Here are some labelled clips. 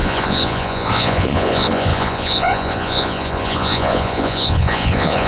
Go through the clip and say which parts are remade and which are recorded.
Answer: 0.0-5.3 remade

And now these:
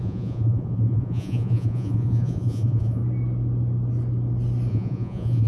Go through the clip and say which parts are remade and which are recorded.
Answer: 0.0-3.0 remade; 3.0-4.7 recorded; 4.7-5.5 remade

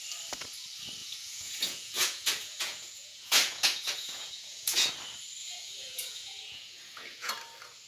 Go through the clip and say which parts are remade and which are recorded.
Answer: 0.0-1.0 recorded; 1.0-4.9 remade; 4.9-5.4 recorded; 5.4-7.3 remade; 7.3-7.9 recorded

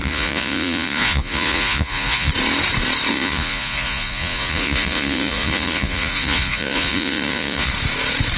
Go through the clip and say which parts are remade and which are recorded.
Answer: 0.0-2.3 remade; 2.3-3.1 recorded; 3.1-7.7 remade; 7.7-8.4 recorded

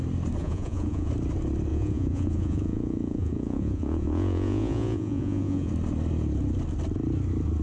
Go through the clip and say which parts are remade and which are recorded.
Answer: 0.0-0.4 recorded; 0.4-1.1 remade; 1.1-1.7 recorded; 1.7-5.7 remade; 5.7-7.6 recorded